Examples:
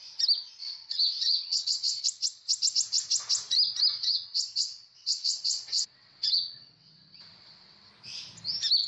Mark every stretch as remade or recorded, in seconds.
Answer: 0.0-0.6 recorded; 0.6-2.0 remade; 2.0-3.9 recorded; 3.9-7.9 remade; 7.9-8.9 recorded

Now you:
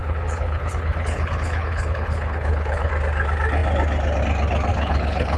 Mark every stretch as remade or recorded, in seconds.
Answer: 0.0-2.9 remade; 2.9-4.7 recorded; 4.7-5.4 remade

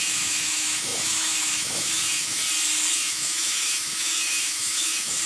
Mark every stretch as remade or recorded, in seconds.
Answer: 0.0-2.4 remade; 2.4-2.9 recorded; 2.9-5.3 remade